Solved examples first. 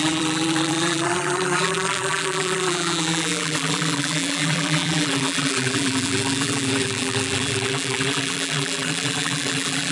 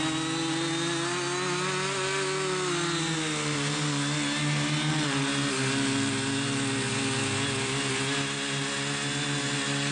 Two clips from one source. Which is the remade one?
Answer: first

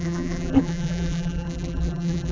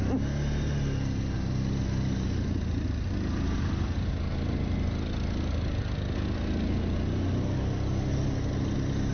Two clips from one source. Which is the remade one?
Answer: first